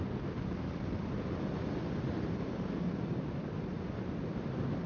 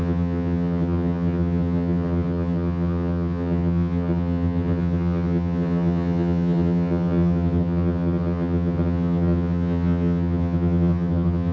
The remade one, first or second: second